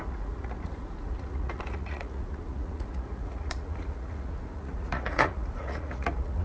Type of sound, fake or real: fake